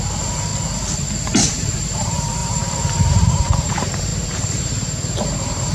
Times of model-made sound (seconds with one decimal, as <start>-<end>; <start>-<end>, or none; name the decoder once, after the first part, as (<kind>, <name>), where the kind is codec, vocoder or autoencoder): 0.0-0.5 (vocoder, BigVGAN v2); 1.5-5.7